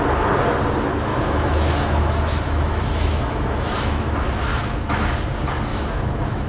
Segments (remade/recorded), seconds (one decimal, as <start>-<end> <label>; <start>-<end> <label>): 0.0-1.1 recorded; 1.1-4.1 remade; 4.1-4.5 recorded; 4.5-5.1 remade; 5.1-5.7 recorded; 5.7-6.5 remade